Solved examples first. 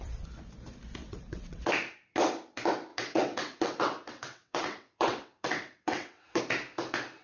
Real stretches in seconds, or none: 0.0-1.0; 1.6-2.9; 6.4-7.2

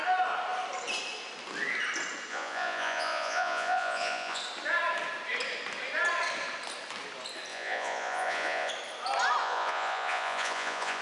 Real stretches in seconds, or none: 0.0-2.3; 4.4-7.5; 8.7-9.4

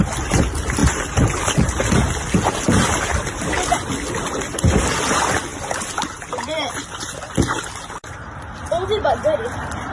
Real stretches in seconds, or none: 0.0-9.9